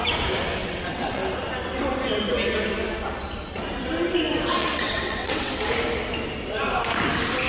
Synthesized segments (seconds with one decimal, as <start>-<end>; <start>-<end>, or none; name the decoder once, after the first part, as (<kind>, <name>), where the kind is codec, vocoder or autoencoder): 0.6-1.2 (vocoder, WaveNeXt); 4.6-5.5